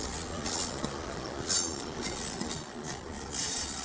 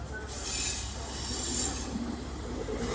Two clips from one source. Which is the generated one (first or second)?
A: first